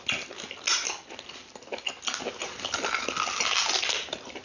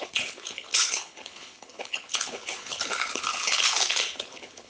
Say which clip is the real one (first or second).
first